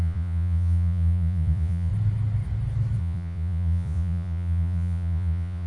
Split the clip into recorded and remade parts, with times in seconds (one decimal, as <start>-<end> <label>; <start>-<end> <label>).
0.0-1.9 remade; 1.9-3.0 recorded; 3.0-5.7 remade